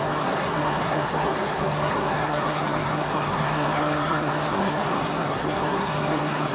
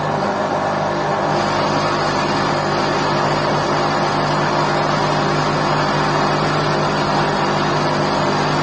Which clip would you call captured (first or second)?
second